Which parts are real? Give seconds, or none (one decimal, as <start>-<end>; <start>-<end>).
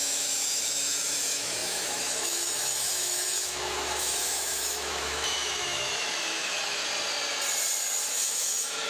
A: 6.9-8.1